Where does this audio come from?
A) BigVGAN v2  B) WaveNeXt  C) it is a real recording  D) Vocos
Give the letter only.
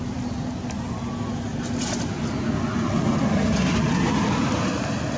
C